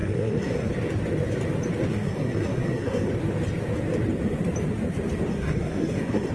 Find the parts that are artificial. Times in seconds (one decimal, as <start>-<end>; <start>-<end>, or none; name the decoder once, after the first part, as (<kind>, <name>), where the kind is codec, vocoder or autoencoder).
0.0-0.7 (codec, SNAC); 1.9-3.1; 5.3-6.3